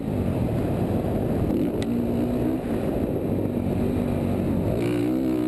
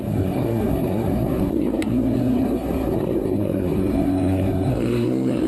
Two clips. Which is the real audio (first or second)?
first